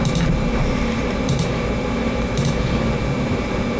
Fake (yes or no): yes